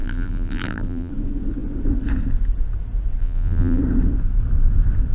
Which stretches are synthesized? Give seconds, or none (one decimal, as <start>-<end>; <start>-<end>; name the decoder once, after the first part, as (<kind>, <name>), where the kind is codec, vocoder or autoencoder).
0.0-1.1 (vocoder, BigVGAN v2); 3.2-3.8